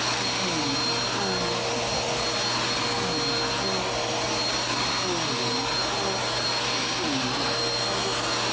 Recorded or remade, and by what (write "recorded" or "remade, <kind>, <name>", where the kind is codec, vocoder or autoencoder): recorded